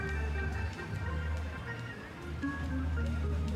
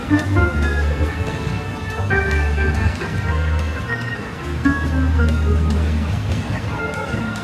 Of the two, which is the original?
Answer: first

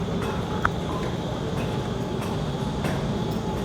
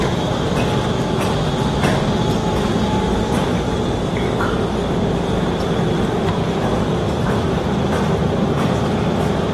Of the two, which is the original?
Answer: first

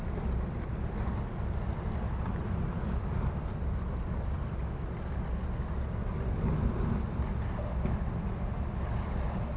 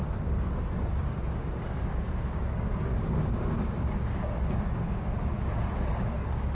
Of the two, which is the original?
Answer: first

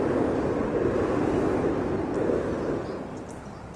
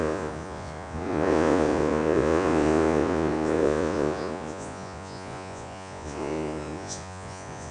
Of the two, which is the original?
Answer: first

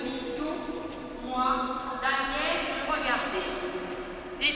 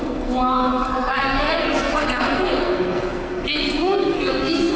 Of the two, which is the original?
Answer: first